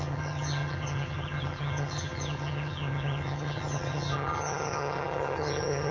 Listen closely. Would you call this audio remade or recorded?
remade